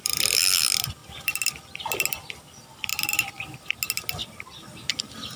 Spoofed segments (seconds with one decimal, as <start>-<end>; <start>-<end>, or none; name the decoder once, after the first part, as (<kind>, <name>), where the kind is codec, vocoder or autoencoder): 2.9-3.7 (vocoder, BigVGAN v2)